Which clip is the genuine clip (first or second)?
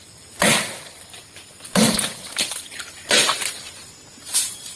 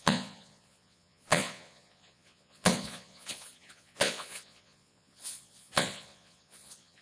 first